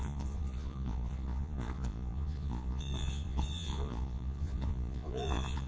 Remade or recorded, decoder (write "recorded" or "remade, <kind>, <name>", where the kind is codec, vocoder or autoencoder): remade, vocoder, Vocos